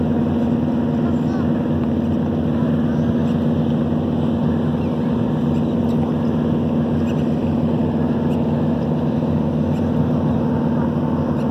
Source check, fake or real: real